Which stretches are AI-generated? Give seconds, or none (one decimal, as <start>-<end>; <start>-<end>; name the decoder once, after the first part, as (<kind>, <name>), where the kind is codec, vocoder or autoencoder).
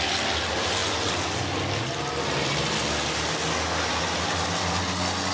none